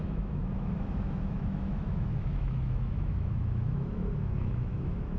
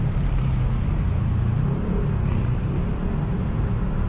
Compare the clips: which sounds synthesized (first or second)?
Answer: first